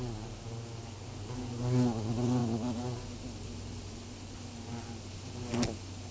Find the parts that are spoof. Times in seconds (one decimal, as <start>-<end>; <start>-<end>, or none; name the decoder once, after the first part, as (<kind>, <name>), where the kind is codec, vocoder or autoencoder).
none